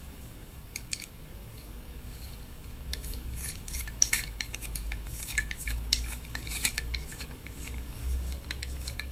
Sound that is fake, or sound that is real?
fake